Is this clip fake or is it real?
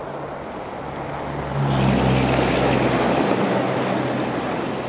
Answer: real